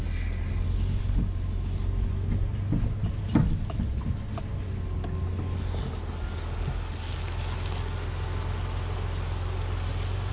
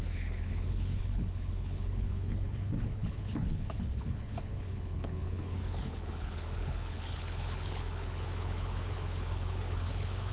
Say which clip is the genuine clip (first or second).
first